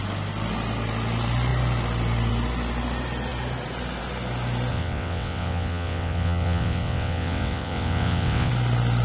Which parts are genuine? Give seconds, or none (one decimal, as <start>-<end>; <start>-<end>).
0.0-4.7; 8.5-9.0